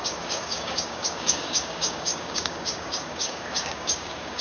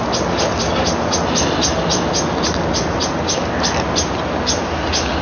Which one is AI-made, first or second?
first